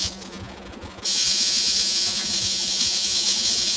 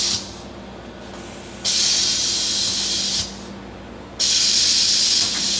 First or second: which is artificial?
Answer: first